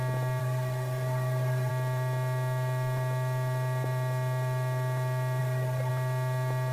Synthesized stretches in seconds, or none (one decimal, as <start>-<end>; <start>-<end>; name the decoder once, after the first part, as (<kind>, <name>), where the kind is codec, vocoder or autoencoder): 0.4-1.7 (codec, SNAC); 5.4-5.9